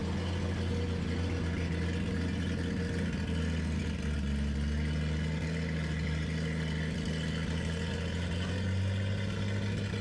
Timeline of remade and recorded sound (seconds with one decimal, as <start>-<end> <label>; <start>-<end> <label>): 0.0-10.0 recorded